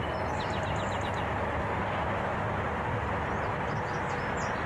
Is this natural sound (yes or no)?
yes